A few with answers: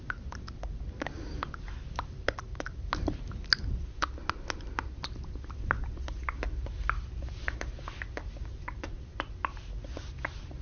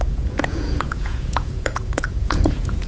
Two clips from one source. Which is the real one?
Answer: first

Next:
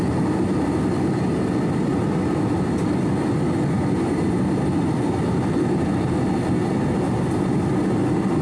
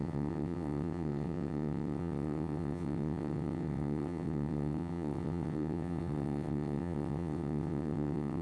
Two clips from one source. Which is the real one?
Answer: first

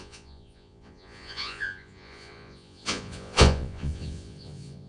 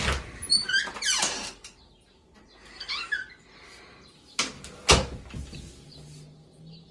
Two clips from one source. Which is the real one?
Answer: second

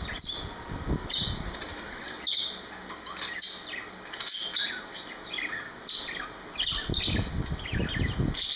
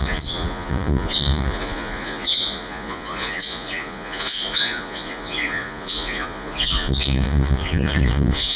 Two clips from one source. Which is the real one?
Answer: first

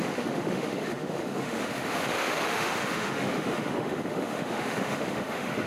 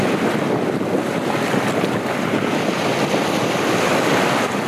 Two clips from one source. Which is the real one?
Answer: second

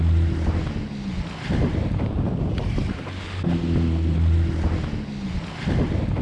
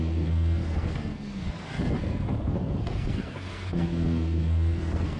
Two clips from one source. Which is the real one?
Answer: first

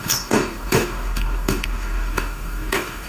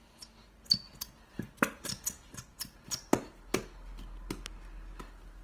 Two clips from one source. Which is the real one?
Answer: second